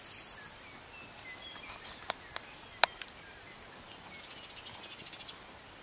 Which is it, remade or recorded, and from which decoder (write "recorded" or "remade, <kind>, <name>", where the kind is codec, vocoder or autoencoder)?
recorded